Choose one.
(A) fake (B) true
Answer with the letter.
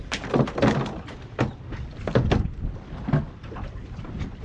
B